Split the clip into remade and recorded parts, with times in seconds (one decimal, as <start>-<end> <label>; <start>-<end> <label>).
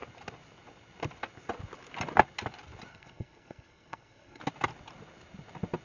0.0-2.9 recorded; 2.9-4.4 remade; 4.4-5.8 recorded